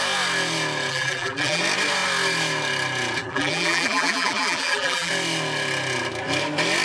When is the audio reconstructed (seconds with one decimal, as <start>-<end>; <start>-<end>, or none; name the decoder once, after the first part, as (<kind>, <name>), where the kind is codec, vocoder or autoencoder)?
0.9-1.6 (vocoder, BigVGAN v2); 3.2-5.1